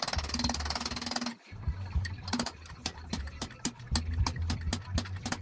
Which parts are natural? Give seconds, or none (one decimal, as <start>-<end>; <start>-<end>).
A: 0.0-1.3; 3.4-5.4